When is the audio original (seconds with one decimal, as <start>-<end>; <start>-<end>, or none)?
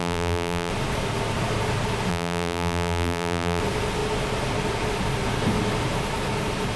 0.7-2.1; 3.6-6.8